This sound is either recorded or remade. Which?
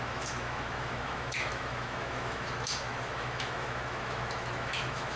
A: remade